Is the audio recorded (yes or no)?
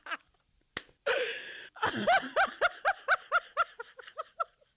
yes